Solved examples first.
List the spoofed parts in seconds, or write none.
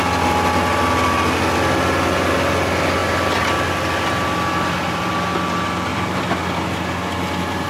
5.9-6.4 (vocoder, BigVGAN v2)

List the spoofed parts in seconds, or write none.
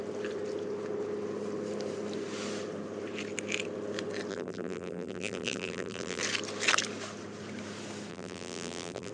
4.3-6.2 (vocoder, BigVGAN v2); 8.1-9.1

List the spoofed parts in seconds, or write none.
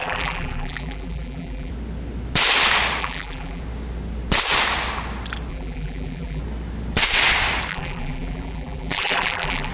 0.0-1.7 (vocoder, BigVGAN v2); 3.0-3.6; 5.5-6.4; 7.7-9.7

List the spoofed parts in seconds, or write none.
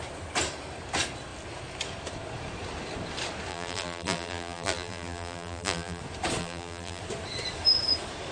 3.5-6.0 (vocoder, BigVGAN v2); 6.4-7.0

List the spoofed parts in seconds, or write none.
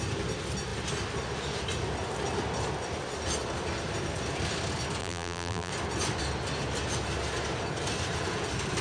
5.0-5.7 (vocoder, BigVGAN v2)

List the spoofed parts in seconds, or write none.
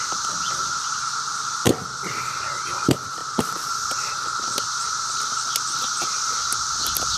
1.3-2.2 (vocoder, BigVGAN v2); 3.2-3.7